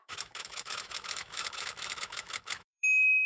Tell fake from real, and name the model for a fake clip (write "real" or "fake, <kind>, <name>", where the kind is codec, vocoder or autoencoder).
fake, autoencoder, DAC-VAE